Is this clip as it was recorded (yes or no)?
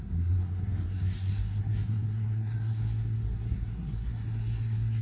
no